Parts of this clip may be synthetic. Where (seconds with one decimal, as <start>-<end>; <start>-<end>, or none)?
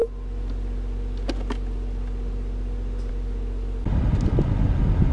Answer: none